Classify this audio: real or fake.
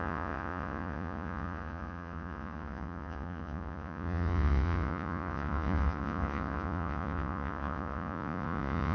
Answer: fake